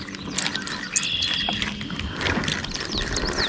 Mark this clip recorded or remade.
recorded